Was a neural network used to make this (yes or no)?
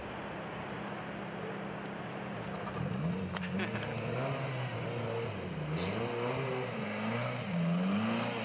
no